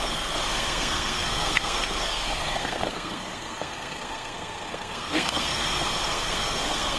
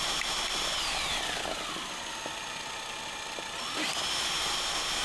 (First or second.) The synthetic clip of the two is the first